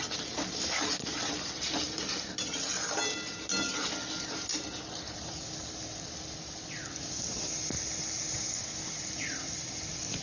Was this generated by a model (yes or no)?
no